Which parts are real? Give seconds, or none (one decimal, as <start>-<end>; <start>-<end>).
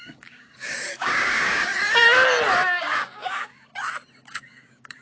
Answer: 1.7-2.8; 3.7-4.3